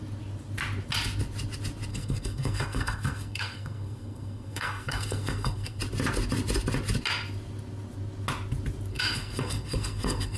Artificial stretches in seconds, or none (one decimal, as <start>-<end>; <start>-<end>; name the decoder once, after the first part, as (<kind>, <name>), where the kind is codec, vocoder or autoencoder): 1.9-5.8 (codec, SNAC); 8.9-10.4